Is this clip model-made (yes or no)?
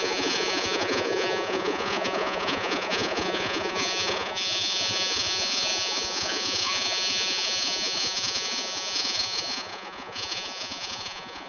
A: yes